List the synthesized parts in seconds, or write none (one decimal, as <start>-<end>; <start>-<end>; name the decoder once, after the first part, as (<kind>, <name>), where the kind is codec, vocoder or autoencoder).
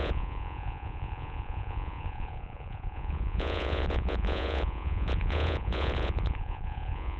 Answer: 0.0-7.2 (vocoder, Vocos)